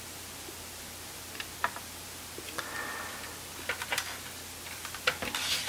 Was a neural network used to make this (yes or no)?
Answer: no